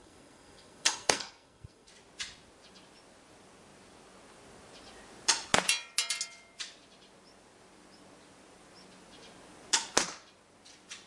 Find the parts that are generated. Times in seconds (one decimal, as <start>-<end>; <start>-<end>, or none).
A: 0.0-1.9